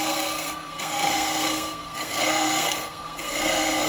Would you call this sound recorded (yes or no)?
no